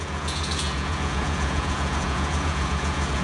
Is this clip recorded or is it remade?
remade